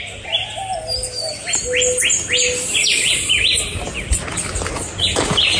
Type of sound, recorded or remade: recorded